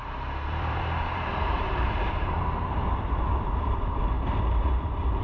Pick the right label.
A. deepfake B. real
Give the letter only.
A